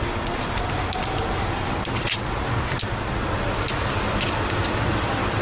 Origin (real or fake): fake